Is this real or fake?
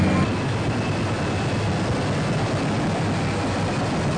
real